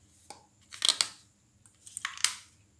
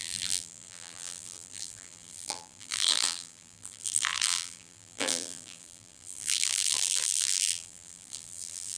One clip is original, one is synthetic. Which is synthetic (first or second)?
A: second